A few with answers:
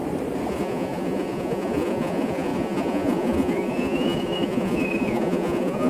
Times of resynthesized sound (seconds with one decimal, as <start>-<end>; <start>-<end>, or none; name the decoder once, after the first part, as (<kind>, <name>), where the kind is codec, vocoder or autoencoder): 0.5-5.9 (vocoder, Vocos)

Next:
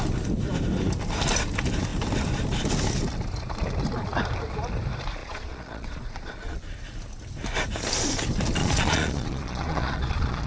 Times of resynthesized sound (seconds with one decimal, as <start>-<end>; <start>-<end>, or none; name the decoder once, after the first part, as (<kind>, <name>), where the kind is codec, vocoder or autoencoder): 5.2-6.6 (vocoder, Vocos); 8.6-10.5

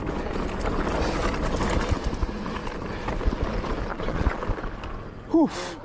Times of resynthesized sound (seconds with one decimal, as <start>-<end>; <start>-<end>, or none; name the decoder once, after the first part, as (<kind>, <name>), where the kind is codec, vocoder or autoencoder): 3.9-4.4 (vocoder, Vocos)